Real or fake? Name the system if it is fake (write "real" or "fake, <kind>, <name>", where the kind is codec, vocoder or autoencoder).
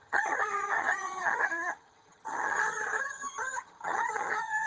fake, vocoder, HiFi-GAN